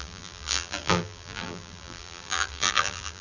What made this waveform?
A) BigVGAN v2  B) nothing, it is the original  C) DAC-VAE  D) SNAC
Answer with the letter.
A